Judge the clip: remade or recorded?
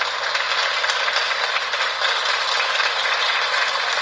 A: recorded